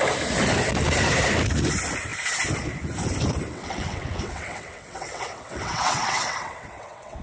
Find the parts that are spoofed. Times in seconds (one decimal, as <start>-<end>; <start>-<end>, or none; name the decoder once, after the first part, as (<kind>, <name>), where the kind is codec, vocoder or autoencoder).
3.5-7.2 (vocoder, WaveNeXt)